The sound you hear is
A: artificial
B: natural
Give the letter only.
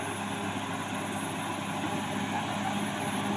B